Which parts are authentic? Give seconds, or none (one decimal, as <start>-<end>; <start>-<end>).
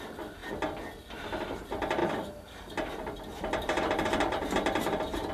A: 0.0-2.0